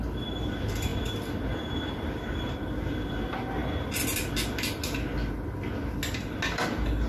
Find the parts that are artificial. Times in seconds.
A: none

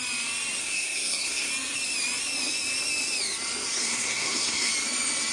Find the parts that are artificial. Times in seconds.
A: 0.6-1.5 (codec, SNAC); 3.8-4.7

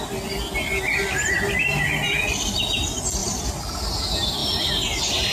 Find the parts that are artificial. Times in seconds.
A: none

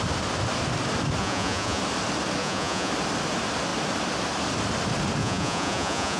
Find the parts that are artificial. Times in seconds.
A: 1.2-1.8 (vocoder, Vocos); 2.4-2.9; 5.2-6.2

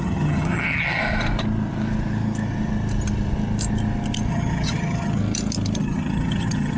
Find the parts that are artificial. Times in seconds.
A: 0.0-1.0 (vocoder, HiFi-GAN); 4.3-5.2; 5.8-6.8